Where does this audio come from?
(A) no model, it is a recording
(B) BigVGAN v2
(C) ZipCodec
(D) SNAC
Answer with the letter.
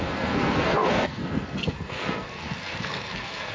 D